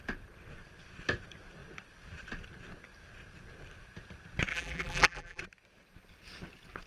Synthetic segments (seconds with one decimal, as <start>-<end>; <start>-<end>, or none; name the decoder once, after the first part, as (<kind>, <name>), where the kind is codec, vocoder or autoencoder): 4.5-5.4 (vocoder, BigVGAN v2)